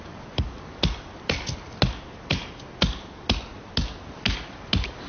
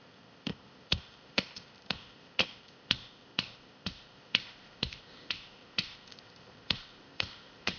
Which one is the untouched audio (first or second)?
first